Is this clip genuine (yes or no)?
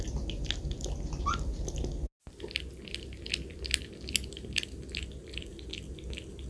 yes